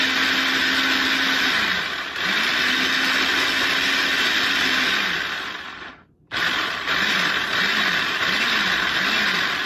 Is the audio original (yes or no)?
yes